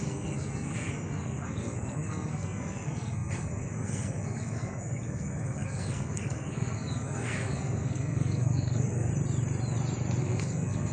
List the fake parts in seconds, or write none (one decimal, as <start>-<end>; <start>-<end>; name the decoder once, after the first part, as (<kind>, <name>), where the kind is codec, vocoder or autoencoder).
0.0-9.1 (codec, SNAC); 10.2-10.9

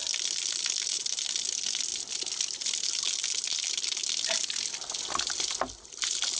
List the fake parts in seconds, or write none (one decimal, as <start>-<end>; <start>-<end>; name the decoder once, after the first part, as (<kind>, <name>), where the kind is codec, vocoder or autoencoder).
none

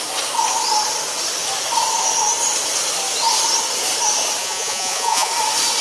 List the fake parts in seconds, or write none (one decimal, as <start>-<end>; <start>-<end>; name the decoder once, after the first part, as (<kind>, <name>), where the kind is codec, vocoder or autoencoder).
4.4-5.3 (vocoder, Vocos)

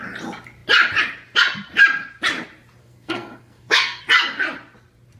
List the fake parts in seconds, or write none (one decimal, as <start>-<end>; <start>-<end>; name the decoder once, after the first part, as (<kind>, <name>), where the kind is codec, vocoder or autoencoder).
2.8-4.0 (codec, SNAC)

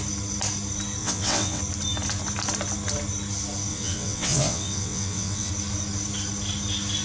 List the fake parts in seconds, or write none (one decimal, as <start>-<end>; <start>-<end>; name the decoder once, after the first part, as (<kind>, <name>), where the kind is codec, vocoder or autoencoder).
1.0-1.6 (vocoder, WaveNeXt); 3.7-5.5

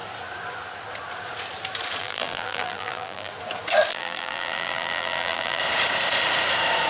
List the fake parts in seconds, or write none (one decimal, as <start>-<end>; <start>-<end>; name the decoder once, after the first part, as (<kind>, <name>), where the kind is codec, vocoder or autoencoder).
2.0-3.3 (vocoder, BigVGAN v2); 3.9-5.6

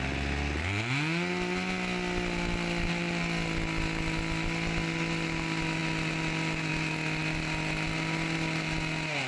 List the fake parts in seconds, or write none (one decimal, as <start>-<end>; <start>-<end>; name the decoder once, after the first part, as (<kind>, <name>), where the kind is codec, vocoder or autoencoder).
none

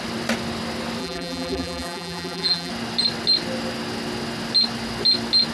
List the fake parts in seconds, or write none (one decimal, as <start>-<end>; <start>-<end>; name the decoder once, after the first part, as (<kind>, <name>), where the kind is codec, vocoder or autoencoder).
1.0-2.7 (vocoder, BigVGAN v2)